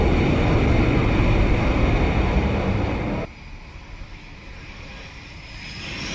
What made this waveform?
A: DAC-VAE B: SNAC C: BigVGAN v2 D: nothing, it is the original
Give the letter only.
D